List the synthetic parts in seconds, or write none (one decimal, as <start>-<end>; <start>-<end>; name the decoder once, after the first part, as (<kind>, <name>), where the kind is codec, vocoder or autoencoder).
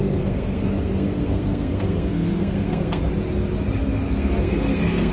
0.0-3.1 (codec, SNAC); 3.9-5.1